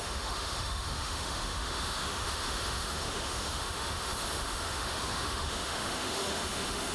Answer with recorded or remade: remade